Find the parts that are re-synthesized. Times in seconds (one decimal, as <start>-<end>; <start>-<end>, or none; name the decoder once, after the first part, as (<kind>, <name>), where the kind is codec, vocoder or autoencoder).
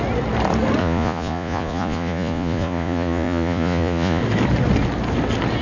0.8-4.2 (vocoder, Vocos)